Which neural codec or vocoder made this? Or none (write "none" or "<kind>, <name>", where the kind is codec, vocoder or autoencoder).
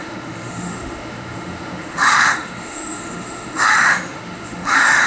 autoencoder, DAC-VAE